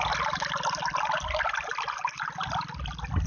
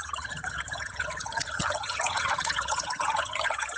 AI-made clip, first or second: second